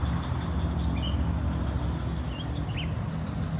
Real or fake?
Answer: real